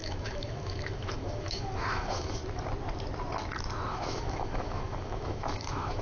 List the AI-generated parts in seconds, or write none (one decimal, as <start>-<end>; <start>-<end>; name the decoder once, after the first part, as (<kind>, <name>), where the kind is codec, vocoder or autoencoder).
0.0-2.4 (autoencoder, DAC-VAE); 3.9-6.0